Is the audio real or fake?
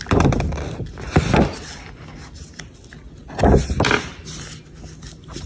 real